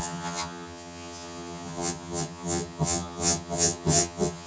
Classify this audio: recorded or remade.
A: remade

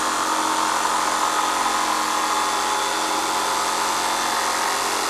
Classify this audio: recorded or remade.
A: recorded